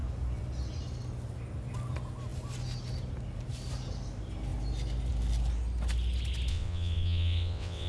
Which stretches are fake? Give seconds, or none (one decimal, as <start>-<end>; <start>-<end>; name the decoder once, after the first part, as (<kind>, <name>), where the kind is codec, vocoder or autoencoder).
6.5-7.9 (vocoder, WaveNeXt)